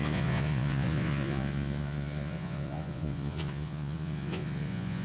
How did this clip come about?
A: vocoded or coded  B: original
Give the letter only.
A